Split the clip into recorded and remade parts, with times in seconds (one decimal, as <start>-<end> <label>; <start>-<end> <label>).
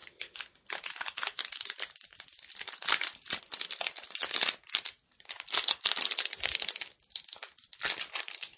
0.0-8.6 recorded